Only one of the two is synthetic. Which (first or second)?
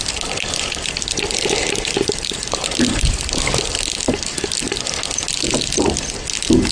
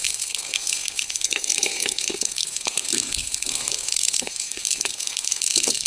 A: second